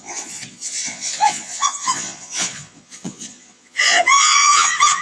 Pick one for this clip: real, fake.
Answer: fake